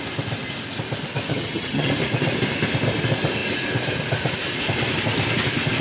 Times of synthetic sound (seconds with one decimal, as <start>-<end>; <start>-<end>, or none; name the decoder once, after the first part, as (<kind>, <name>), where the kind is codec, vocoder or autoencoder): 1.3-1.9 (vocoder, HiFi-GAN)